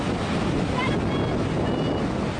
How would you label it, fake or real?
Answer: real